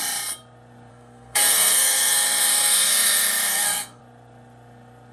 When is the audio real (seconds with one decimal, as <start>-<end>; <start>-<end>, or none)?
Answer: 0.0-0.9; 4.0-5.1